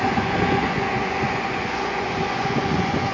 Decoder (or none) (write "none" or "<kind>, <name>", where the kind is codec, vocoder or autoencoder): vocoder, Vocos